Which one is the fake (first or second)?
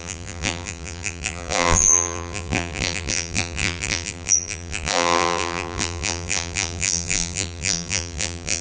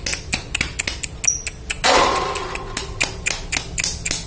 first